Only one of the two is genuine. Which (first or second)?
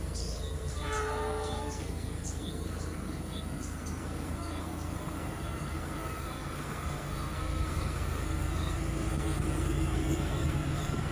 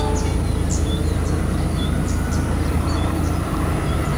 second